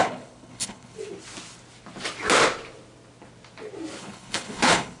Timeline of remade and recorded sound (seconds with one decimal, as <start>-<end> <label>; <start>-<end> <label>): 0.0-1.0 remade; 1.0-4.0 recorded; 4.0-5.0 remade